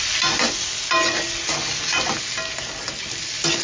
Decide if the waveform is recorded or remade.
recorded